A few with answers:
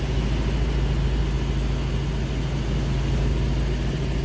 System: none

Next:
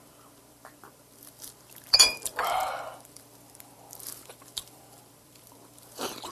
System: vocoder, BigVGAN v2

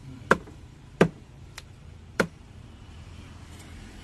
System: vocoder, BigVGAN v2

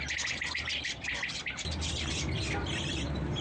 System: vocoder, BigVGAN v2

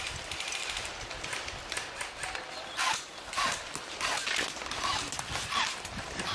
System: none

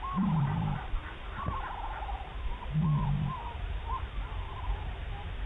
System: vocoder, BigVGAN v2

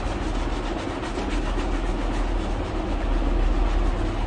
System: none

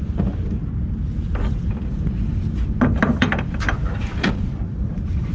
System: vocoder, BigVGAN v2